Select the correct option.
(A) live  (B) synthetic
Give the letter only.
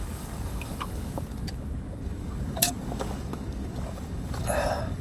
B